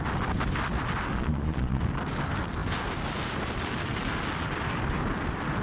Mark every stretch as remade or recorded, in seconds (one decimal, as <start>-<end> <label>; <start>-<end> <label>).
0.0-1.1 recorded; 1.1-1.8 remade; 1.8-5.6 recorded